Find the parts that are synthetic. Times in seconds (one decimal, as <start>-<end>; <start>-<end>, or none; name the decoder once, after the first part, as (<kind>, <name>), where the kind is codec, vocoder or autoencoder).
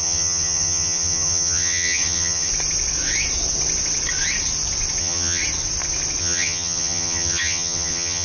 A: 0.0-2.5 (vocoder, HiFi-GAN); 5.0-5.4; 6.2-8.2